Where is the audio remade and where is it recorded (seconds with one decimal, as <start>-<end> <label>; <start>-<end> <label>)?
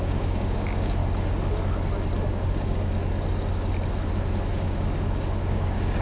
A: 0.0-1.0 remade; 1.0-2.3 recorded; 2.3-3.0 remade; 3.0-4.5 recorded; 4.5-6.0 remade